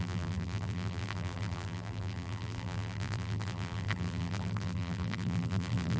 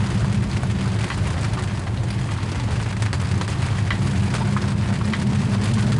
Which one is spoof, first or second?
first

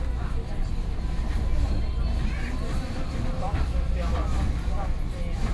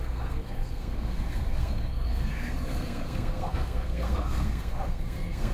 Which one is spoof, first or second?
second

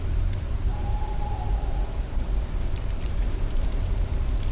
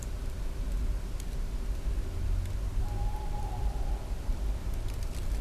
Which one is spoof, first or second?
first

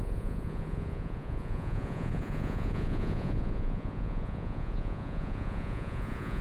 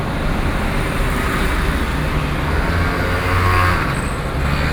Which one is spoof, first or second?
first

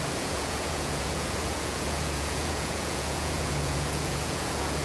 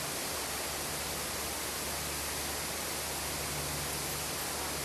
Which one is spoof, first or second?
first